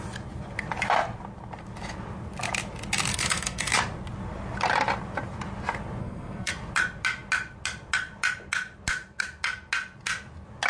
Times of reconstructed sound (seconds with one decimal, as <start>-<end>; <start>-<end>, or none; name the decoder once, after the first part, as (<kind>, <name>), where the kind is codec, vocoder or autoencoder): 3.1-3.7 (codec, SNAC); 6.0-6.5